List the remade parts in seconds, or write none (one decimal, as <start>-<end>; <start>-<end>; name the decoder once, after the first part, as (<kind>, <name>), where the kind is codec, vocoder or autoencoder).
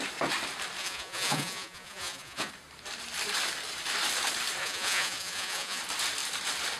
0.8-2.5 (vocoder, Vocos); 4.6-5.8